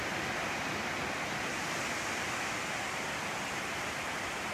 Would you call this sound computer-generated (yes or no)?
no